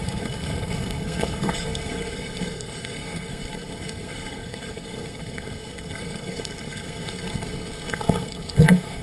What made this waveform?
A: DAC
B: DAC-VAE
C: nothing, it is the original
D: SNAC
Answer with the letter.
D